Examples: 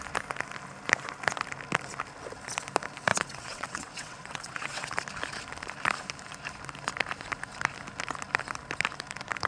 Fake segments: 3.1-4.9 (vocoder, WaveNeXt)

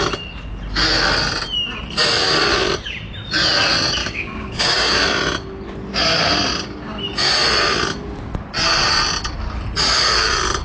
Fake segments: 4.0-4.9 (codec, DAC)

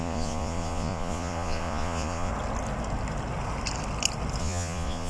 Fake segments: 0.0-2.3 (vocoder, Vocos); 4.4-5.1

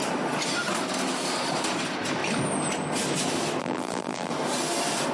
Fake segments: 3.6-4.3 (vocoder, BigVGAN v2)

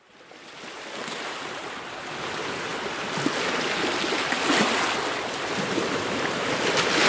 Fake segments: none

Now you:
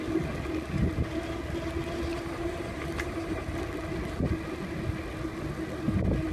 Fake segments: 2.1-3.6 (vocoder, BigVGAN v2)

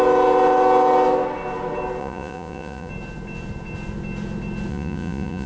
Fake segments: 2.0-2.9 (vocoder, Vocos); 4.7-5.5